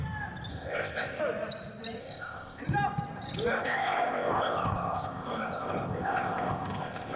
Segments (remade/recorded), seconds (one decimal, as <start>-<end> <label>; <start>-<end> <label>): 0.0-0.5 recorded; 0.5-1.2 remade; 1.2-2.0 recorded; 2.0-2.6 remade; 2.6-3.5 recorded; 3.5-7.2 remade